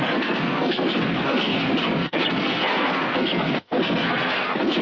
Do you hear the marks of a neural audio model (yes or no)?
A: yes